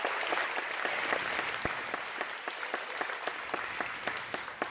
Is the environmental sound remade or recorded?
recorded